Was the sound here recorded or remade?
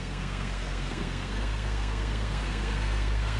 remade